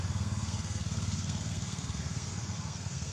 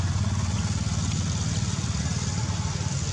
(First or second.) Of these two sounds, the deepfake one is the first